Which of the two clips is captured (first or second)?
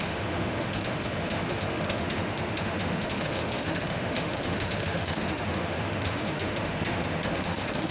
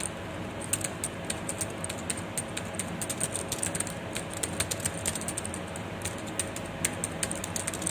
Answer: second